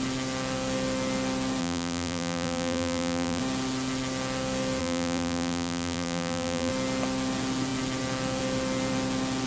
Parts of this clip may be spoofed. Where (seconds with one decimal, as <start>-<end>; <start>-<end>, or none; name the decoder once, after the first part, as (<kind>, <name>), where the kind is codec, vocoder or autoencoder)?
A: 1.6-3.4 (vocoder, BigVGAN v2); 4.8-6.7